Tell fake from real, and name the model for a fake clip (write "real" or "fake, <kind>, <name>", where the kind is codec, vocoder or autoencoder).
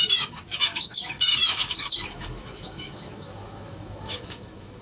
fake, autoencoder, DAC-VAE